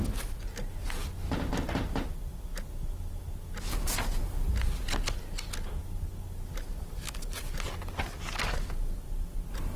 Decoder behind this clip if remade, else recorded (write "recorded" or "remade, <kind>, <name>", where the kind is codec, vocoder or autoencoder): recorded